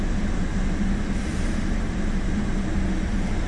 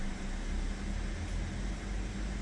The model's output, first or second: first